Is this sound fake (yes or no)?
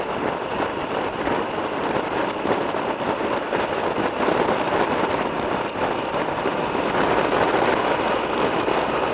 no